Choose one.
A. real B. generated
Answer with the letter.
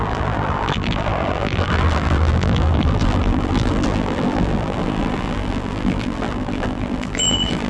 B